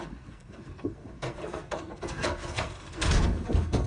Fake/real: fake